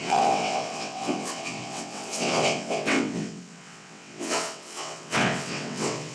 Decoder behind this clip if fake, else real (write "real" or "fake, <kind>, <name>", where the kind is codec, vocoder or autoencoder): fake, vocoder, WaveNeXt